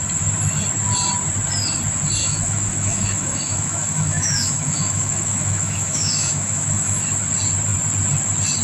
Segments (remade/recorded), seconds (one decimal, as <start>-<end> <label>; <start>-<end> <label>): 0.0-2.2 recorded; 2.2-7.0 remade; 7.0-8.6 recorded